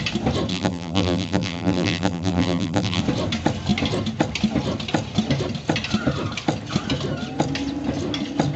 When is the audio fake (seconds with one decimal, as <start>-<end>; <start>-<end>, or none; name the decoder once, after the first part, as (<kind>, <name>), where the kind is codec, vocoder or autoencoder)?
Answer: 0.5-3.0 (vocoder, BigVGAN v2)